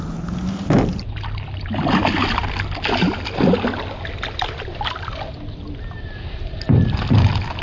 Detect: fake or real real